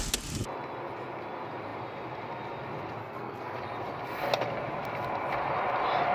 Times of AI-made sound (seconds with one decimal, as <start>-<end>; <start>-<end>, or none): 3.0-3.6